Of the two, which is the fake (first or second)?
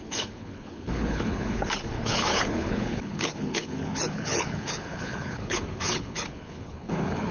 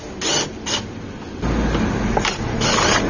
first